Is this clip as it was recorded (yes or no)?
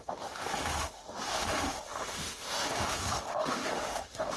no